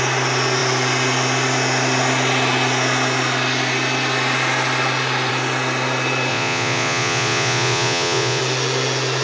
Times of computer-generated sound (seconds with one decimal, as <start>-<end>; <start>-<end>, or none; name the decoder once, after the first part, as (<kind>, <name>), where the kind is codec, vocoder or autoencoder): 6.3-8.4 (vocoder, Vocos)